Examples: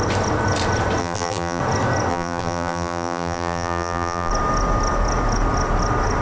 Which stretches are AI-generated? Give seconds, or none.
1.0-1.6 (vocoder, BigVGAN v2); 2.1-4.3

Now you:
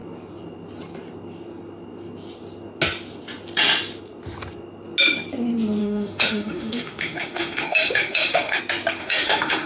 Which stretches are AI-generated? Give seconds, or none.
5.8-8.6 (autoencoder, DAC-VAE); 9.0-9.7

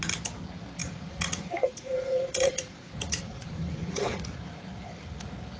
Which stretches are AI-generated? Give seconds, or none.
0.8-4.2 (vocoder, Vocos)

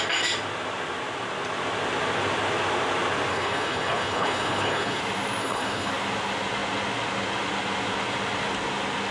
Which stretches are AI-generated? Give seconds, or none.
3.3-5.0 (codec, HILCodec); 5.4-5.9

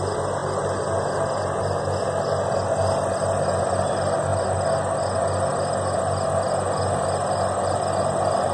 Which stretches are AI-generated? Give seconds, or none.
none

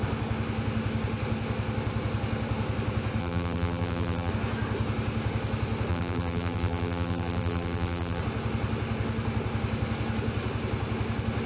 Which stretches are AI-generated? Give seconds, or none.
3.2-4.3 (vocoder, BigVGAN v2); 5.9-8.2